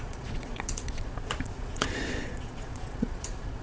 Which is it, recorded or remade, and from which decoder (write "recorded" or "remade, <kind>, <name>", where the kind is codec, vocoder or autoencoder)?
remade, vocoder, Vocos